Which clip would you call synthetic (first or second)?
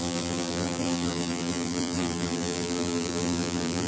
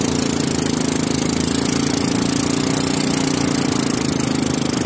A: first